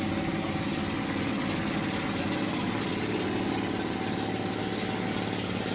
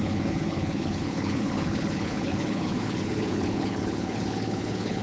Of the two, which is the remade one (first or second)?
second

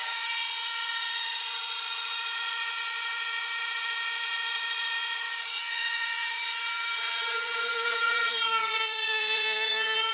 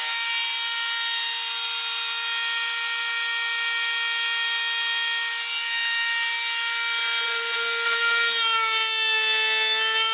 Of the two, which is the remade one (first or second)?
first